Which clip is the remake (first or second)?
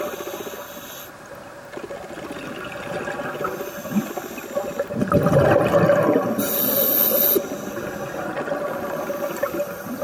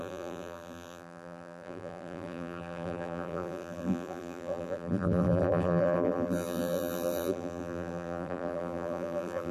second